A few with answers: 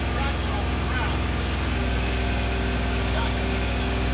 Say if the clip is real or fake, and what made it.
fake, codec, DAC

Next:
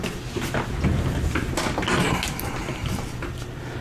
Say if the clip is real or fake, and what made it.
real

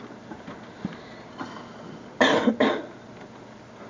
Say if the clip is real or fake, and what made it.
real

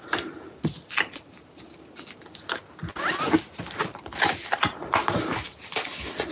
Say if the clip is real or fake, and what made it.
real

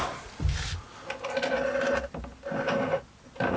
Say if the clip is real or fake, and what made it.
real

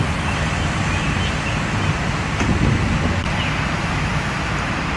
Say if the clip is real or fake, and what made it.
real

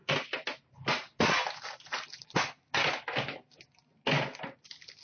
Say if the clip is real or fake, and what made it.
real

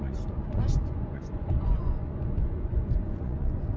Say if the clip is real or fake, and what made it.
fake, vocoder, Vocos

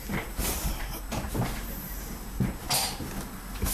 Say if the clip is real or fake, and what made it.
real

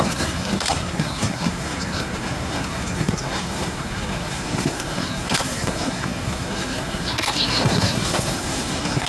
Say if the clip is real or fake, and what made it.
fake, codec, SNAC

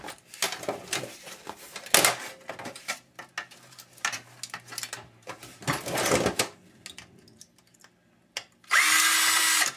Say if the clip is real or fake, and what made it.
real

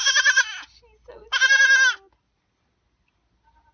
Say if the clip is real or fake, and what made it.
real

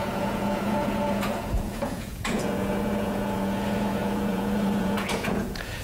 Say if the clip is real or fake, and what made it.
fake, vocoder, Vocos